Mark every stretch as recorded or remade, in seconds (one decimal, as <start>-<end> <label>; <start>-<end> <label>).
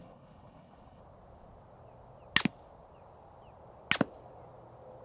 0.0-1.0 remade; 1.0-5.0 recorded